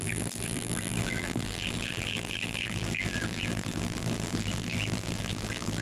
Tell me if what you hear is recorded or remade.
remade